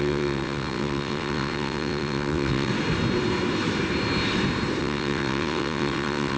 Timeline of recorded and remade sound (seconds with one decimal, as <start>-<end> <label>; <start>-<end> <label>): 0.0-2.7 remade; 2.7-4.8 recorded; 4.8-6.4 remade